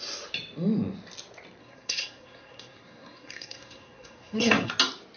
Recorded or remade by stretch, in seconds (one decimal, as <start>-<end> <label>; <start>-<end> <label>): 0.0-1.6 recorded; 1.6-4.7 remade; 4.7-5.2 recorded